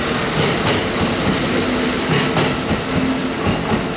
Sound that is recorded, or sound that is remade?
recorded